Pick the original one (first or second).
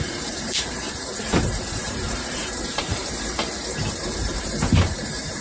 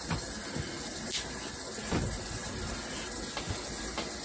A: second